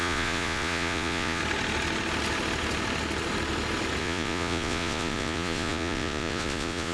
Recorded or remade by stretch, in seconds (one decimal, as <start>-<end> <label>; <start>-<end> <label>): 0.0-1.4 remade; 1.4-4.0 recorded; 4.0-6.9 remade